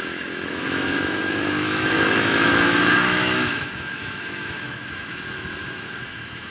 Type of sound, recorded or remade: remade